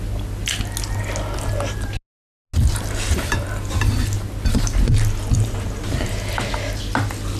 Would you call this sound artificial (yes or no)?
no